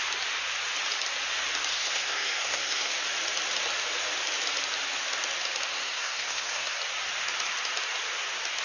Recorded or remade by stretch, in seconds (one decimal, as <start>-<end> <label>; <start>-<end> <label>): 0.0-1.7 recorded; 1.7-2.9 remade; 2.9-5.7 recorded; 5.7-6.8 remade; 6.8-8.6 recorded